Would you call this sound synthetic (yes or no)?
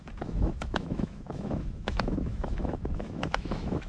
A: yes